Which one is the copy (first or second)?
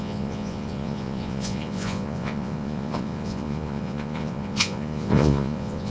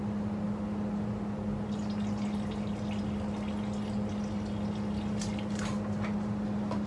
first